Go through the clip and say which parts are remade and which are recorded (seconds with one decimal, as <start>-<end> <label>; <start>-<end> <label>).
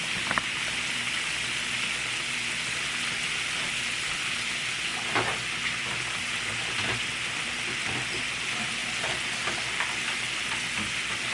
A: 0.0-11.3 recorded